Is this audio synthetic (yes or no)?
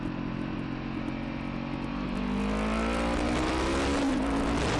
no